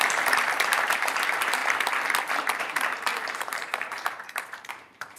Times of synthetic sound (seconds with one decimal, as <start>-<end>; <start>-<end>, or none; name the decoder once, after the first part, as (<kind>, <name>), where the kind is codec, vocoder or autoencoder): 0.0-1.6 (vocoder, BigVGAN v2); 2.6-5.2